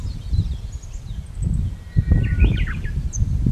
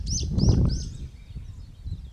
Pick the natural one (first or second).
second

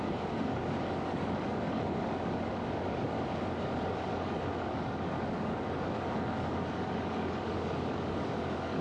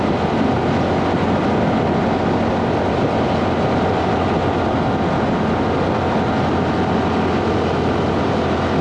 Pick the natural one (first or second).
second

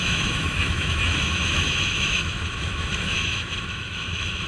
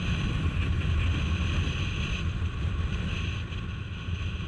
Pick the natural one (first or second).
second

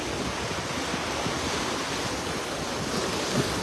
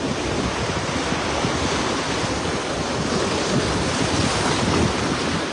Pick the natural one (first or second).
first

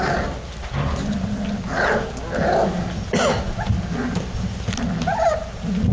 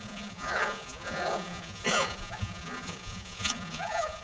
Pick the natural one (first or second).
first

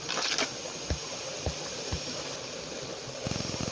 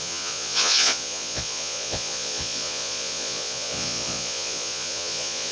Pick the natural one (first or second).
first